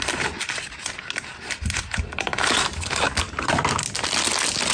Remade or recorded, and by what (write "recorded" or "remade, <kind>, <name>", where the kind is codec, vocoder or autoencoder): recorded